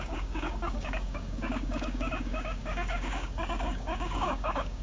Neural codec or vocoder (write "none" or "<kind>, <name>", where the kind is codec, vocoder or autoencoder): codec, DAC